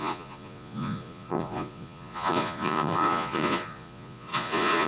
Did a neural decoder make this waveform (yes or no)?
yes